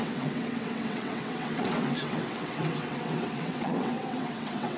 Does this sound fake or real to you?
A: fake